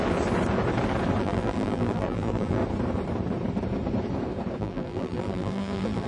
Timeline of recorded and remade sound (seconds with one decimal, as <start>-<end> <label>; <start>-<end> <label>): 0.0-1.2 recorded; 1.2-2.6 remade; 2.6-4.6 recorded; 4.6-6.1 remade